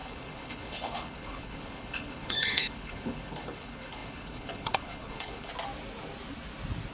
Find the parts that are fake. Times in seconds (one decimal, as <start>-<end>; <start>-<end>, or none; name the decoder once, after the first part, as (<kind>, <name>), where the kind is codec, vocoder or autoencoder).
0.0-5.5 (codec, HILCodec)